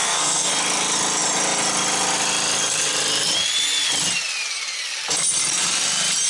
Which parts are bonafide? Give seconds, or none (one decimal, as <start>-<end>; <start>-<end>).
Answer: 0.5-6.3